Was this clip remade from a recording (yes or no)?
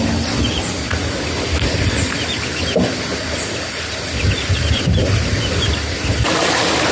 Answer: no